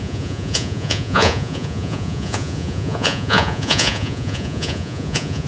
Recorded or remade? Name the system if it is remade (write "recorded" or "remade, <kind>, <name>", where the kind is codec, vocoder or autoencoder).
remade, vocoder, Vocos